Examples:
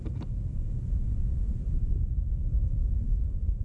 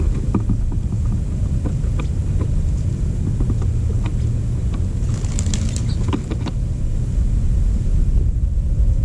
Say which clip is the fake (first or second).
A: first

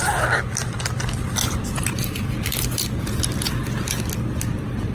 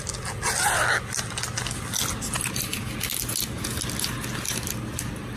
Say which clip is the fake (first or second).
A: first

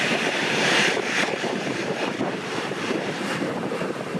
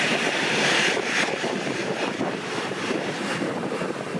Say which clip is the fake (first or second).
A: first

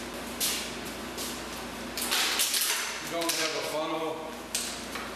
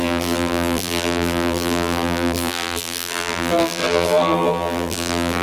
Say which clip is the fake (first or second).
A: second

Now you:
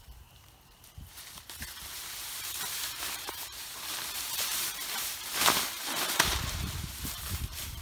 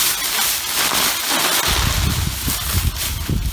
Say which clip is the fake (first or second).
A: first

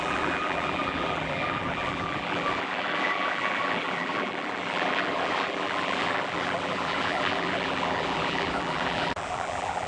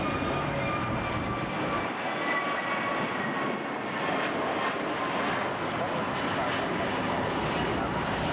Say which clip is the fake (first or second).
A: first